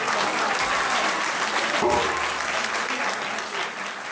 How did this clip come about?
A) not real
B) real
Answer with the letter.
B